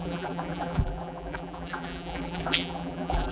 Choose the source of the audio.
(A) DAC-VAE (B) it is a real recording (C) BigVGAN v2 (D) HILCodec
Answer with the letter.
C